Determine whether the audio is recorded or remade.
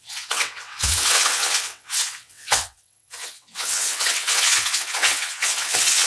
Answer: remade